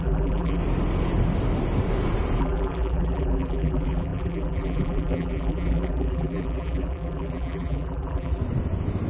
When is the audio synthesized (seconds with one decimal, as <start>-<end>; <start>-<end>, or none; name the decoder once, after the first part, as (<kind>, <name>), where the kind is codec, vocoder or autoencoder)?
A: 0.0-0.6 (vocoder, BigVGAN v2); 2.4-8.4